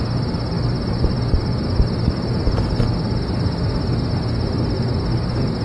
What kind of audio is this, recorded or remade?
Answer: recorded